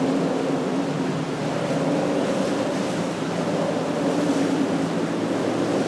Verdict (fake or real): real